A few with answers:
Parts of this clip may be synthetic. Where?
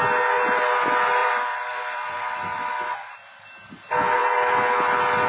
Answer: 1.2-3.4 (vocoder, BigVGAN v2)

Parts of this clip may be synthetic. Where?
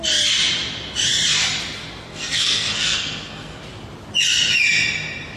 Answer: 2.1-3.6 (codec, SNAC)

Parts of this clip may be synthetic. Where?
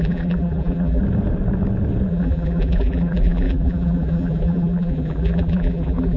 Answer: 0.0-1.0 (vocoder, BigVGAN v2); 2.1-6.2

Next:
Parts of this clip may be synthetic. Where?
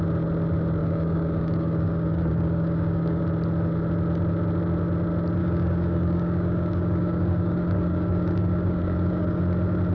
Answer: 0.8-3.2 (codec, DAC); 5.4-9.4